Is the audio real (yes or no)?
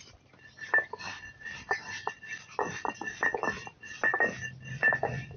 yes